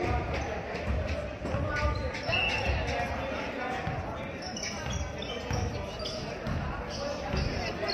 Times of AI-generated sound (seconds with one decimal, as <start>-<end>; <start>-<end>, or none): none